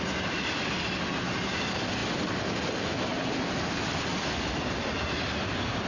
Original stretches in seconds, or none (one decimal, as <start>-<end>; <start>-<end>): 0.0-5.9